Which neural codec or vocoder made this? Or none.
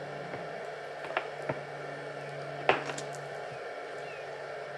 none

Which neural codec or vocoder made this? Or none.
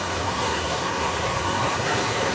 codec, SNAC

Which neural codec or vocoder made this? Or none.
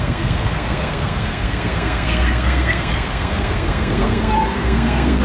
codec, SNAC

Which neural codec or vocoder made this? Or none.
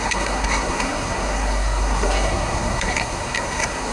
codec, SNAC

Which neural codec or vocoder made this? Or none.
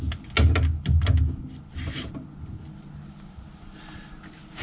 none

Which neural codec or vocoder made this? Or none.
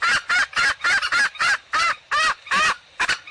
none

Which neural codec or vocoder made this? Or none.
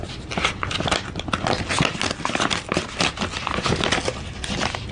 none